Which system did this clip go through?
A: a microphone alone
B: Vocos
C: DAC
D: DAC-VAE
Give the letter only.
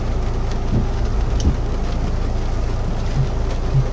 A